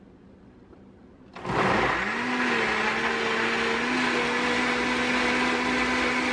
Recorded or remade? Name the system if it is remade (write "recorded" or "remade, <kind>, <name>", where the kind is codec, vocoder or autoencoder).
recorded